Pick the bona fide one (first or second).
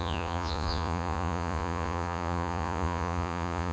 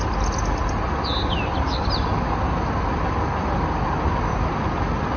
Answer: second